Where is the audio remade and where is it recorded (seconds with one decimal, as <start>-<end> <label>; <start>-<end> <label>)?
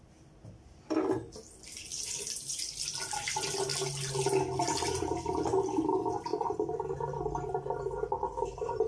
0.0-1.9 recorded; 1.9-3.0 remade; 3.0-6.3 recorded; 6.3-7.2 remade; 7.2-8.9 recorded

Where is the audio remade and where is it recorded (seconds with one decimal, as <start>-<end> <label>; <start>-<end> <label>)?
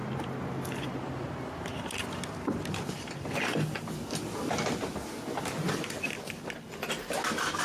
0.0-7.6 recorded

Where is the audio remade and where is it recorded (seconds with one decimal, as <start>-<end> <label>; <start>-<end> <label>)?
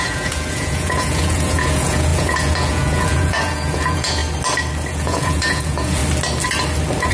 0.0-4.2 remade; 4.2-4.9 recorded; 4.9-6.0 remade; 6.0-7.1 recorded